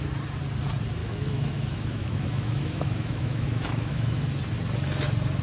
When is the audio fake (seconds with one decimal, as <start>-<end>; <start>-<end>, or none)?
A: 1.0-4.2